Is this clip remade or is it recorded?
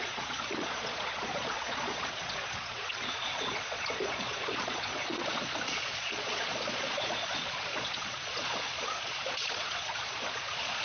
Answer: remade